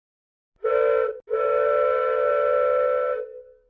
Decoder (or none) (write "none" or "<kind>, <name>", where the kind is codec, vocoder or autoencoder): none